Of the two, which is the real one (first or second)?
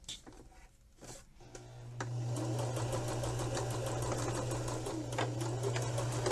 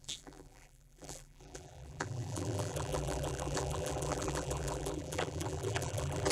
first